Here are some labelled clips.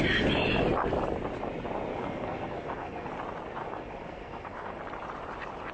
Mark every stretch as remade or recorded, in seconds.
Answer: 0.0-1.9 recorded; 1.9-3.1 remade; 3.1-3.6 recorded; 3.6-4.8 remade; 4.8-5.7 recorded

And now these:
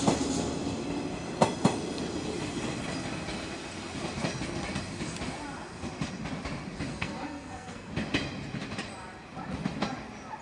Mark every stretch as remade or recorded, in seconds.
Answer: 0.0-6.9 recorded; 6.9-7.9 remade; 7.9-10.4 recorded

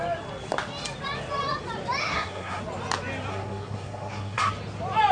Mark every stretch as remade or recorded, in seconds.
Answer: 0.0-2.0 recorded; 2.0-2.6 remade; 2.6-3.3 recorded; 3.3-4.5 remade; 4.5-5.1 recorded

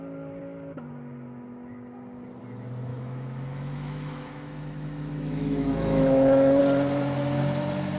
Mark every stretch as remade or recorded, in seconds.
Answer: 0.0-2.9 recorded; 2.9-6.6 remade; 6.6-8.0 recorded

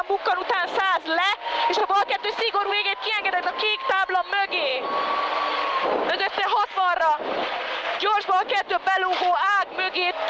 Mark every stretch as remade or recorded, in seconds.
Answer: 0.0-10.3 recorded

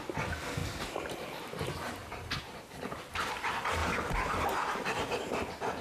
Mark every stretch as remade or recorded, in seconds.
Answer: 0.0-0.6 recorded; 0.6-1.4 remade; 1.4-2.0 recorded; 2.0-2.6 remade; 2.6-3.8 recorded; 3.8-5.2 remade; 5.2-5.8 recorded

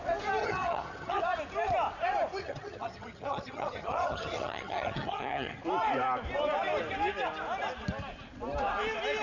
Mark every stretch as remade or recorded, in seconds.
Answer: 0.0-0.4 recorded; 0.4-1.2 remade; 1.2-2.4 recorded; 2.4-5.6 remade; 5.6-9.2 recorded

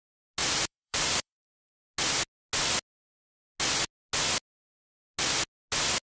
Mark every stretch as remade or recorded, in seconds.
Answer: 0.0-0.4 recorded; 0.4-1.7 remade; 1.7-6.2 recorded